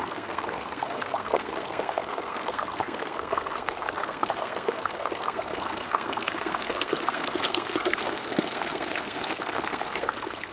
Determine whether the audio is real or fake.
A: fake